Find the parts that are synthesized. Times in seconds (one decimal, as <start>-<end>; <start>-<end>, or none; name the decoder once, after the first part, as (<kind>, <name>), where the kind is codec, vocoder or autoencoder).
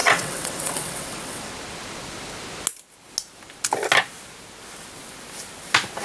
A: 0.0-1.5 (vocoder, WaveNeXt)